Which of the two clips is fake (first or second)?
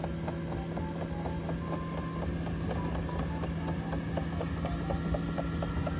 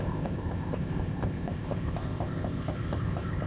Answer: second